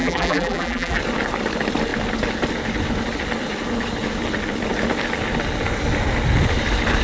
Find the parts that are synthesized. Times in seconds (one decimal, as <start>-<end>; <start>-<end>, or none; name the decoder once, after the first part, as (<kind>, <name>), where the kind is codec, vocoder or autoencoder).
0.0-1.0 (vocoder, BigVGAN v2)